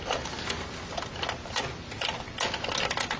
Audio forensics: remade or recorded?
recorded